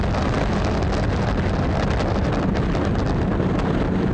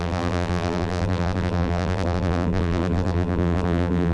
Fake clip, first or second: second